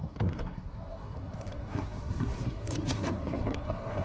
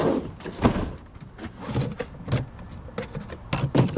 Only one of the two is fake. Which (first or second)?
first